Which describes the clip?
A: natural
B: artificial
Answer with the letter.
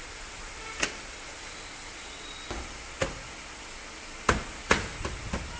A